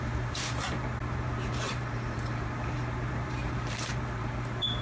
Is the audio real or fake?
fake